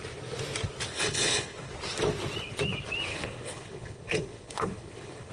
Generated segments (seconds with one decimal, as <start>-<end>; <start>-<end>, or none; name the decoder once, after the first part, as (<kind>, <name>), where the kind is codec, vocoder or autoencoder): 0.9-1.7 (codec, HILCodec); 3.1-5.3